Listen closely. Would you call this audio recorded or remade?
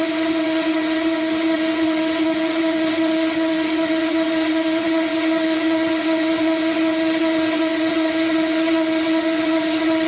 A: remade